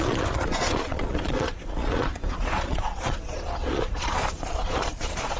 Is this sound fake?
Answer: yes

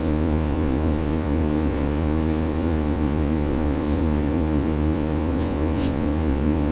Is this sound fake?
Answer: yes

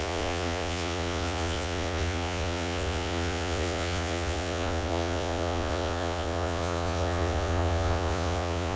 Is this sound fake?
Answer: yes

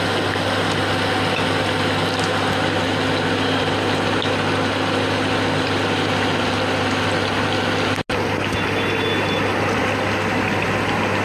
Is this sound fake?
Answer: no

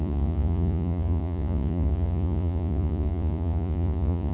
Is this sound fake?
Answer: yes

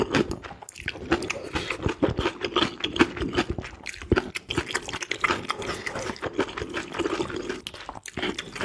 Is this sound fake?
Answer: no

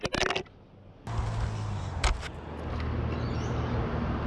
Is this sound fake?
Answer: no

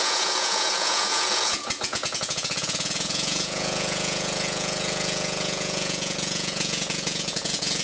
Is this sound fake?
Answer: yes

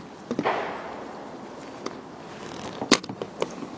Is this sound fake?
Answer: no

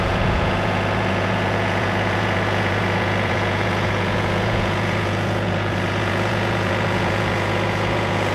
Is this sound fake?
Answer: yes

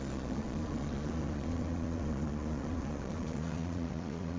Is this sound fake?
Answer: yes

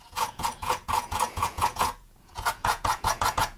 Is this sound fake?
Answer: yes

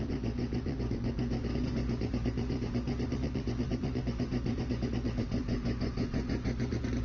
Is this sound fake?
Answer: yes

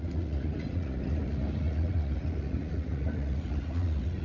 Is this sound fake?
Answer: yes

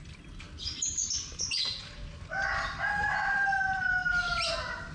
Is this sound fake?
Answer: no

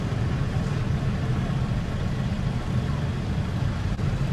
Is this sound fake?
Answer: no